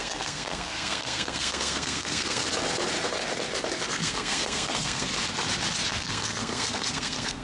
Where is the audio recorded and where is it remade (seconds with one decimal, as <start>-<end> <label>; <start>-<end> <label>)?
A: 0.0-2.4 remade; 2.4-3.9 recorded; 3.9-5.1 remade; 5.1-5.9 recorded; 5.9-7.4 remade